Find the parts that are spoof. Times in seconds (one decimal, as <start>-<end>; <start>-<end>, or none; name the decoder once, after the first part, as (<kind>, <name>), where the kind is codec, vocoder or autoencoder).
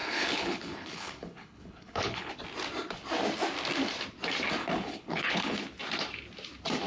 0.0-2.3 (codec, HILCodec); 4.6-5.6